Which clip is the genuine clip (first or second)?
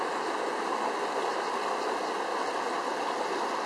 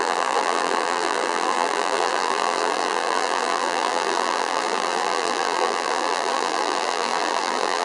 first